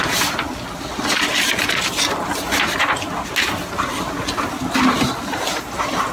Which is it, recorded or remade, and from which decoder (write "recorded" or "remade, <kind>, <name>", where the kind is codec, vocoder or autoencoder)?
recorded